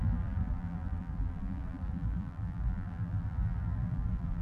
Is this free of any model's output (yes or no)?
no